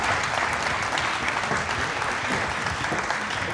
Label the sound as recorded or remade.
recorded